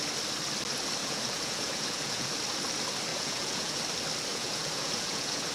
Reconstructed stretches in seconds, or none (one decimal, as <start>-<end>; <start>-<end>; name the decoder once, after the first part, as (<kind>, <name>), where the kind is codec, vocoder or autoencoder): 1.0-2.3 (vocoder, Vocos); 3.1-3.8; 4.3-5.5